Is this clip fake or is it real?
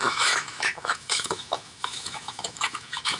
fake